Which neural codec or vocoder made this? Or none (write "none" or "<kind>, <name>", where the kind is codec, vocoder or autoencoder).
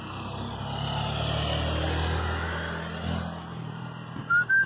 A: none